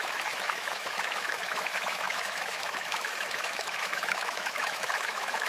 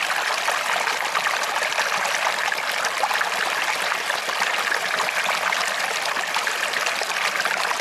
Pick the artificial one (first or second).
first